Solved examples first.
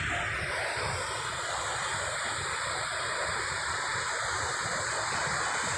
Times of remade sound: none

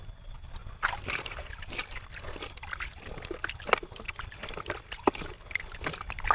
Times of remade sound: none

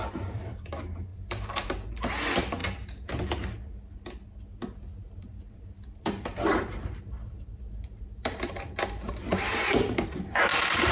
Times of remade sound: 1.1-1.9 (vocoder, BigVGAN v2); 5.0-9.1

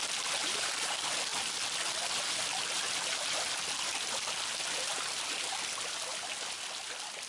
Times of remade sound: 0.4-0.9 (vocoder, BigVGAN v2)

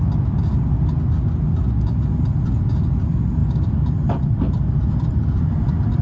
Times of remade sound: 3.4-6.0 (vocoder, BigVGAN v2)

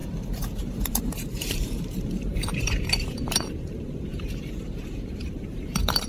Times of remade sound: 0.0-6.1 (vocoder, BigVGAN v2)

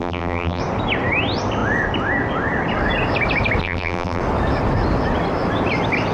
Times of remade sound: 0.0-0.6 (vocoder, BigVGAN v2); 3.6-4.2